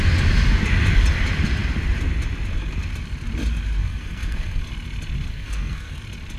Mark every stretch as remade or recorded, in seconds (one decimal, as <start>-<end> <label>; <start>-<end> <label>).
0.0-3.8 recorded; 3.8-4.6 remade; 4.6-5.3 recorded; 5.3-6.0 remade; 6.0-6.4 recorded